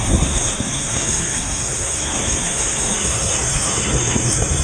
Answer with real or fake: fake